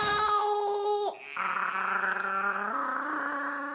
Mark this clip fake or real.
real